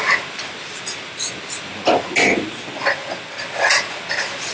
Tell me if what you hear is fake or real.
real